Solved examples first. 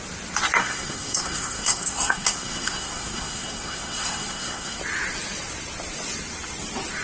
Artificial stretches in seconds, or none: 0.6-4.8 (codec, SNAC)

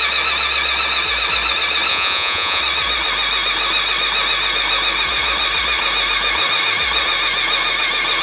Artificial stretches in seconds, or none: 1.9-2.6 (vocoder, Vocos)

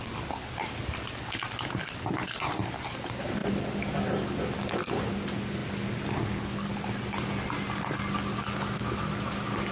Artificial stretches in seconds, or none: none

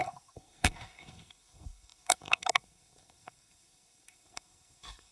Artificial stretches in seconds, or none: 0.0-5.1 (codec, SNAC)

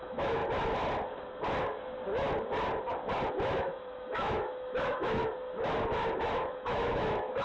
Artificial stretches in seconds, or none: 0.0-0.4 (autoencoder, DAC-VAE); 3.3-5.2; 6.3-7.4

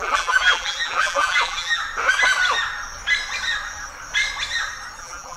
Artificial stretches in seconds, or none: 0.0-1.8 (vocoder, BigVGAN v2); 5.0-5.4

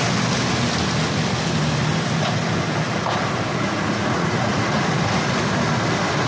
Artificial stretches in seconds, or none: 3.5-5.4 (vocoder, Vocos)

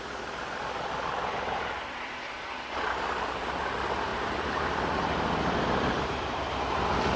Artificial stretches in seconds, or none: 1.2-2.2 (vocoder, BigVGAN v2); 4.1-6.6